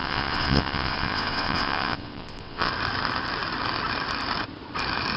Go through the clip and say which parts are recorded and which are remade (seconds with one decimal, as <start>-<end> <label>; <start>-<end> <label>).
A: 0.0-2.7 remade; 2.7-5.2 recorded